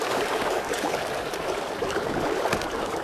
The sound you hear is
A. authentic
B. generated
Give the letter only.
B